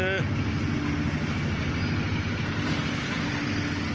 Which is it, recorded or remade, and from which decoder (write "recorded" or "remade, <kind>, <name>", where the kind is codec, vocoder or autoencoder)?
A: recorded